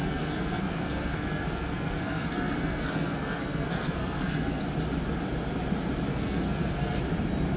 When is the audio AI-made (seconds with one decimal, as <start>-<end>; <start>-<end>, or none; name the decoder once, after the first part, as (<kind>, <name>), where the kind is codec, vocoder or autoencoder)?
0.0-4.6 (codec, SNAC); 6.1-7.0